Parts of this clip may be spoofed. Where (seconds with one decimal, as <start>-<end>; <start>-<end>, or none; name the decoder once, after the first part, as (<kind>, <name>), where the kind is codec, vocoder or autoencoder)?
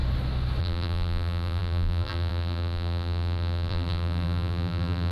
0.6-5.1 (vocoder, BigVGAN v2)